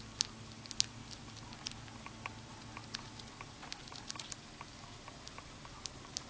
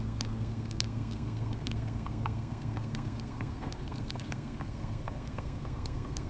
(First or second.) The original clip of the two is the first